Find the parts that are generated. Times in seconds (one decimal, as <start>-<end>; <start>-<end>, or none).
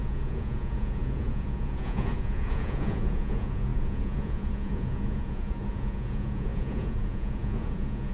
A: 0.0-8.1